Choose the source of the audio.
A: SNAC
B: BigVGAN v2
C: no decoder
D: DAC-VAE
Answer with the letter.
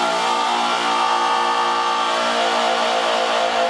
C